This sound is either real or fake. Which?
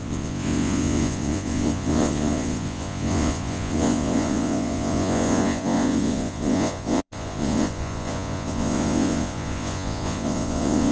fake